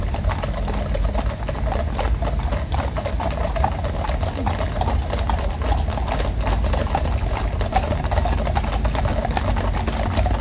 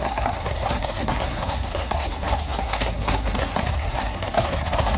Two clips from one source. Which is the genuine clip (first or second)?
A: first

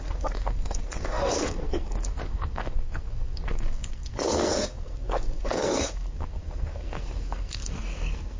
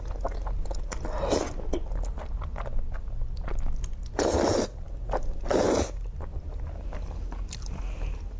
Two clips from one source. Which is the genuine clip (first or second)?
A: second